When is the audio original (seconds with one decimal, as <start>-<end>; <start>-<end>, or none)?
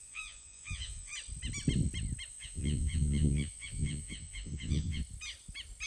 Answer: 1.1-2.3; 5.0-5.9